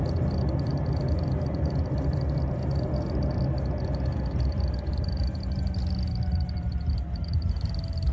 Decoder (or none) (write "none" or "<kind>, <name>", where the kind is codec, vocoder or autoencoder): none